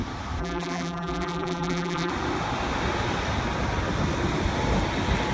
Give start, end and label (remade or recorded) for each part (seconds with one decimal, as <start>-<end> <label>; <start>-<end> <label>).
0.0-0.4 recorded; 0.4-2.1 remade; 2.1-5.3 recorded